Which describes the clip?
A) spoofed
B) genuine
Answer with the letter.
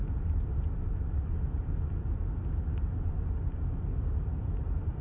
B